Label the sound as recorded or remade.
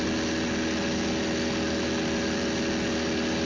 recorded